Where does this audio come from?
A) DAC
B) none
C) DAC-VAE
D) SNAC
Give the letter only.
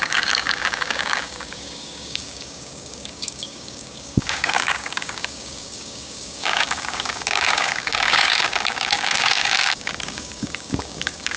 A